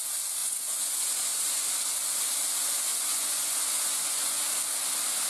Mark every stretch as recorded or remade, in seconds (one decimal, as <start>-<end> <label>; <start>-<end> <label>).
0.0-0.4 recorded; 0.4-1.6 remade; 1.6-2.9 recorded; 2.9-4.4 remade; 4.4-5.3 recorded